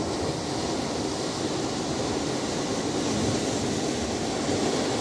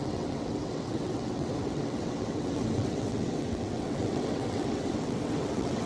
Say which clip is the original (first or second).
first